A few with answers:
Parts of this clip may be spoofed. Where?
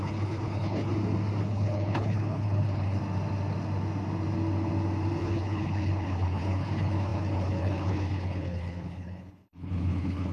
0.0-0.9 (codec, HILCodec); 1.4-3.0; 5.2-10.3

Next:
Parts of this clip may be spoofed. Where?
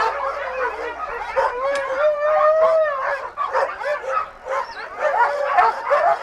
none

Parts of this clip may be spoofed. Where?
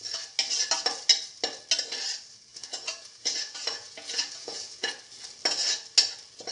2.5-4.9 (vocoder, Vocos)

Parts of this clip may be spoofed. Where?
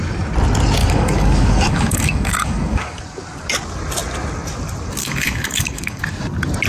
0.8-3.0 (codec, DAC); 5.0-6.0